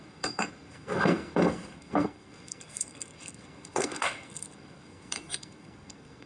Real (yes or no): no